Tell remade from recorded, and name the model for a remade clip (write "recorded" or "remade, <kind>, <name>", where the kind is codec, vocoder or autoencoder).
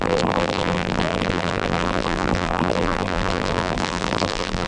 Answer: remade, vocoder, BigVGAN v2